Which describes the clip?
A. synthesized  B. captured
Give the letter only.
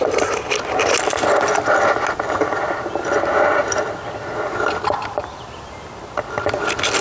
B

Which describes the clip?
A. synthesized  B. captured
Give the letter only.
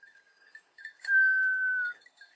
A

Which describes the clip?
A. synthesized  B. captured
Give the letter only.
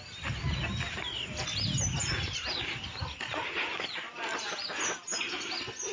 B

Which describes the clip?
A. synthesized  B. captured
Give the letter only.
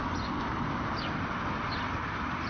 B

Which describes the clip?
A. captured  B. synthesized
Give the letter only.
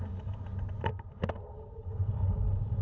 A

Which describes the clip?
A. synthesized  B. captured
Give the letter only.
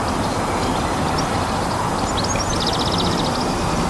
B